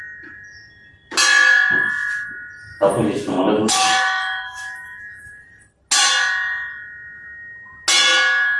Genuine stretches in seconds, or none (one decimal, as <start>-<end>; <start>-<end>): 0.0-2.7; 5.3-8.6